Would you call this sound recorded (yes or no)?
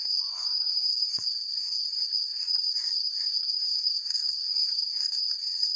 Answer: no